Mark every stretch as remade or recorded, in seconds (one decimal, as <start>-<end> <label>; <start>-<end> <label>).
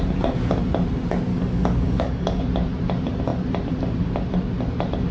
0.0-1.3 recorded; 1.3-2.4 remade; 2.4-5.1 recorded